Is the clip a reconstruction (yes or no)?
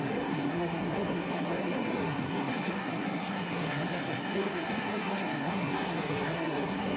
yes